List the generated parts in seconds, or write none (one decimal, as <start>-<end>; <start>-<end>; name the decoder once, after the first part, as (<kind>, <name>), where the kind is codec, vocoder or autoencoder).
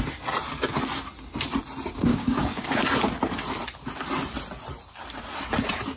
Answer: 2.1-2.8 (codec, DAC)